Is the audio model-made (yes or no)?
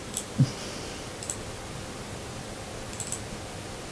no